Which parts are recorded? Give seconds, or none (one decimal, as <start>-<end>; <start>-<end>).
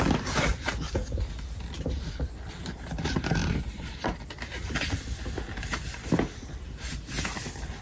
0.0-3.4; 4.2-7.8